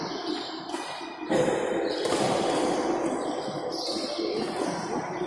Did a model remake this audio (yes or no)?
no